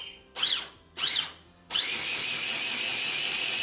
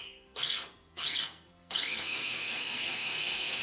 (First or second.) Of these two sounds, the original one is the first